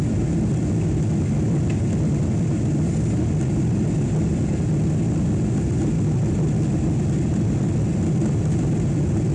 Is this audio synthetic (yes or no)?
no